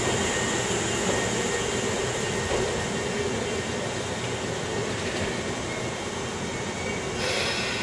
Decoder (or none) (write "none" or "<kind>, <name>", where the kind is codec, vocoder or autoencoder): none